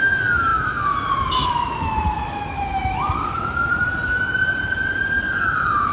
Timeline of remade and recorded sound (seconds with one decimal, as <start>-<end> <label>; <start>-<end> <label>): 0.0-3.7 remade; 3.7-5.2 recorded; 5.2-5.9 remade